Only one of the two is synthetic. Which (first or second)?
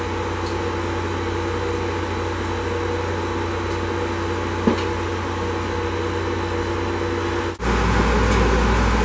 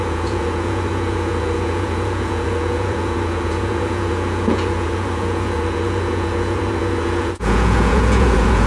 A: second